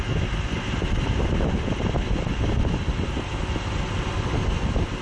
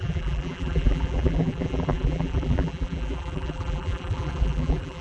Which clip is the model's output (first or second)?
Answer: second